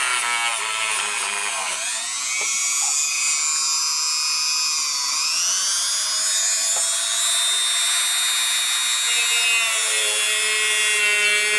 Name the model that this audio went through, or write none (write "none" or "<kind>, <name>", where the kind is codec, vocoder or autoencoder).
none